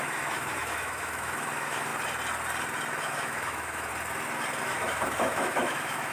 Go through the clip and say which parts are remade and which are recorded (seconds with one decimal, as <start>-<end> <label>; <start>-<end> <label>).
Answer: 0.0-1.9 remade; 1.9-3.0 recorded; 3.0-3.9 remade; 3.9-4.6 recorded; 4.6-6.1 remade